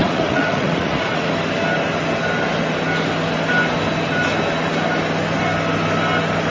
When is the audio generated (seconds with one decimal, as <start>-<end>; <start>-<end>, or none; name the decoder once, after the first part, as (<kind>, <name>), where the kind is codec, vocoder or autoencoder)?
0.0-1.3 (vocoder, Vocos)